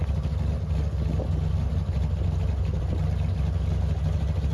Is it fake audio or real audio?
real